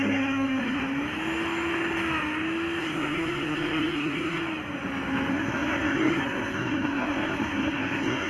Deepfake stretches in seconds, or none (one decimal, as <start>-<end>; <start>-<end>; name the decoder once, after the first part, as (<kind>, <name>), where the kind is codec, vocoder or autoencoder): 0.0-0.8 (codec, SNAC); 2.8-4.4; 5.3-8.3